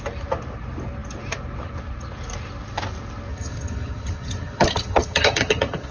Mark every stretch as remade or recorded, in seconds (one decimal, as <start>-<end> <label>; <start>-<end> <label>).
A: 0.0-3.3 recorded; 3.3-5.9 remade